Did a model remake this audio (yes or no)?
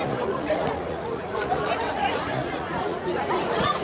yes